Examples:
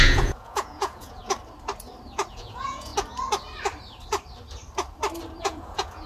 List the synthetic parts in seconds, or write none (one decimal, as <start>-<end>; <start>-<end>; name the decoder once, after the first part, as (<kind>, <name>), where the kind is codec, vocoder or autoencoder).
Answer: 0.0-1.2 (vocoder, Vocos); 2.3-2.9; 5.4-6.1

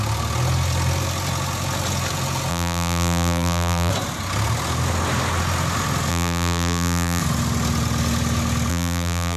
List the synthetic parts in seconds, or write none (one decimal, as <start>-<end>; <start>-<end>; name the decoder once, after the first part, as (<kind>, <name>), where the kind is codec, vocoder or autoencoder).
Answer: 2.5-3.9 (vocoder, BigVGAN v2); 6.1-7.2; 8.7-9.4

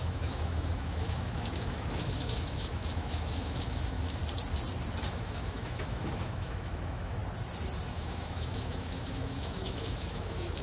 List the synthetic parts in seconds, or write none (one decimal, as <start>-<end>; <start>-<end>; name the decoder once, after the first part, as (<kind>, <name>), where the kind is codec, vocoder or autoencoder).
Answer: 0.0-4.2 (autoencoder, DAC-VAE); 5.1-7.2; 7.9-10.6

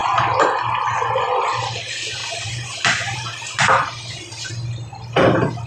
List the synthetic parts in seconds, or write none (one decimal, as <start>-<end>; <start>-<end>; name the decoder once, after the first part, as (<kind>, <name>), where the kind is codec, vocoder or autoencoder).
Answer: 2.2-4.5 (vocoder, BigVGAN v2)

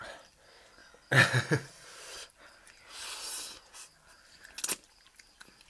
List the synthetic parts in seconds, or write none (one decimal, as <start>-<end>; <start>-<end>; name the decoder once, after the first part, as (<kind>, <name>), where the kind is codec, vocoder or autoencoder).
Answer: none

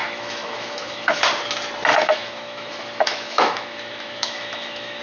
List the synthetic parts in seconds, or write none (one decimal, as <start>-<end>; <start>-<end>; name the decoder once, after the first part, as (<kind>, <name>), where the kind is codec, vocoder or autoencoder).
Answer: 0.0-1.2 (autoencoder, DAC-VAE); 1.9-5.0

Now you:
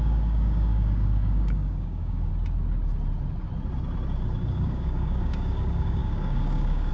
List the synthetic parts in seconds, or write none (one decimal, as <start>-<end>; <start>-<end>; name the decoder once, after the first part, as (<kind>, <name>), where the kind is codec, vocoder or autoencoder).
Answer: 0.0-2.3 (codec, DAC); 4.5-6.9

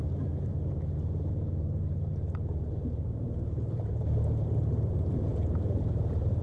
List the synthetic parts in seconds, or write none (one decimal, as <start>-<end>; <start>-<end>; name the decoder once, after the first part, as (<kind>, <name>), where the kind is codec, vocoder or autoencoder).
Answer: 0.0-6.4 (vocoder, BigVGAN v2)